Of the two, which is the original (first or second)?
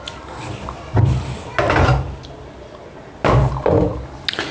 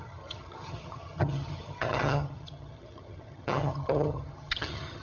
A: first